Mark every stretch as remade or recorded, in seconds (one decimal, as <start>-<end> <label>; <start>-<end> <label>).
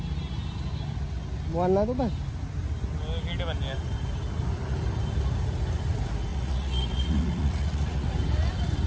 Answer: 0.0-6.3 recorded; 6.3-8.1 remade; 8.1-8.9 recorded